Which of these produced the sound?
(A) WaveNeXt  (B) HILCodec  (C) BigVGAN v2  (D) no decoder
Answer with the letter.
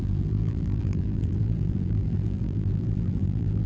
C